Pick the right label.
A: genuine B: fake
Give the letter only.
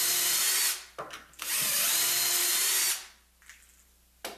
A